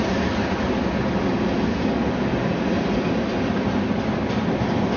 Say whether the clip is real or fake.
real